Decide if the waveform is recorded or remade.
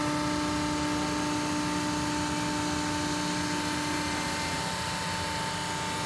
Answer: recorded